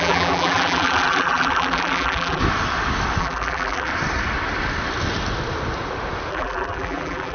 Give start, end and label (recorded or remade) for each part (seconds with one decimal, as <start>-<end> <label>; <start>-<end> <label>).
0.0-2.4 remade; 2.4-3.2 recorded; 3.2-3.9 remade; 3.9-6.3 recorded; 6.3-7.3 remade